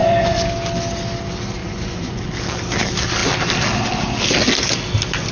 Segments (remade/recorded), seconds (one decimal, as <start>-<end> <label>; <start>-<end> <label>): 0.0-0.5 remade; 0.5-1.6 recorded; 1.6-2.2 remade; 2.2-5.3 recorded